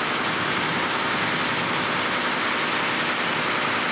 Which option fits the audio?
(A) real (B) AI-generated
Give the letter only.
A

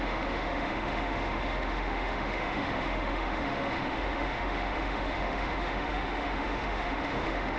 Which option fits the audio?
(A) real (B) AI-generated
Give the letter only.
B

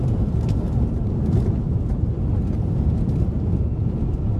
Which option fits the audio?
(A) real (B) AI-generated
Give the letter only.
A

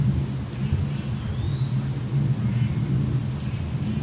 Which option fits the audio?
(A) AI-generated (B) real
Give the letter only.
B